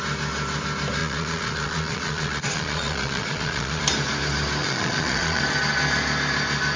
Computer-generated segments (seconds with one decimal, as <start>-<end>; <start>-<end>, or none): 1.0-3.8; 4.6-5.4